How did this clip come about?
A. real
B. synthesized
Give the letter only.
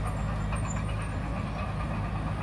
A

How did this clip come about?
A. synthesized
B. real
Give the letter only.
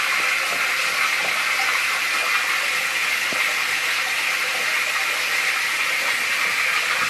B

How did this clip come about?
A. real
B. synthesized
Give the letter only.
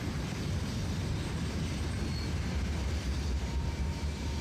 A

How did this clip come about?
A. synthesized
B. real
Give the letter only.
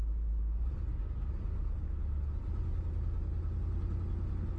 B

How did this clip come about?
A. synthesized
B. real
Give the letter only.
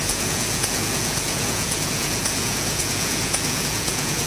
A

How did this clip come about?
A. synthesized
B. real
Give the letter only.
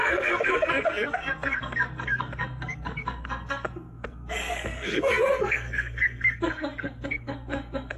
A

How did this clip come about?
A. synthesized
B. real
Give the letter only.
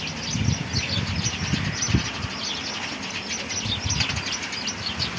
B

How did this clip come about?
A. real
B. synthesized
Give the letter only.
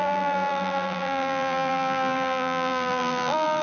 B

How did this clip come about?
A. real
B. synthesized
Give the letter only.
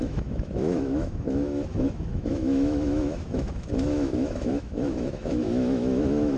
B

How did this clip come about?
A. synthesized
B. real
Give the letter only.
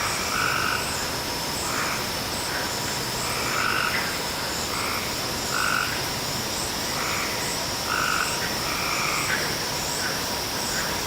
B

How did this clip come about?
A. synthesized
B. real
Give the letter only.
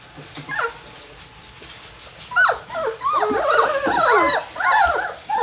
B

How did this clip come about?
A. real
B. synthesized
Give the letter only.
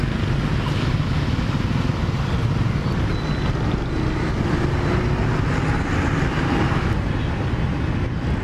A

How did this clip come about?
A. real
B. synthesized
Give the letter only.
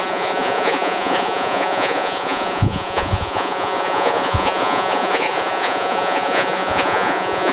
B